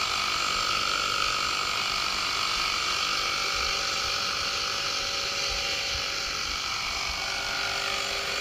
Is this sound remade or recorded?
recorded